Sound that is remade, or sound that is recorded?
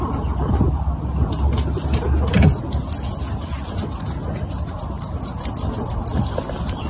recorded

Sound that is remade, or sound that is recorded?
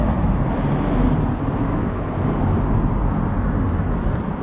recorded